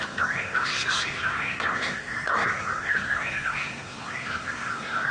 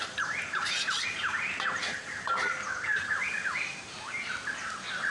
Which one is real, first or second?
second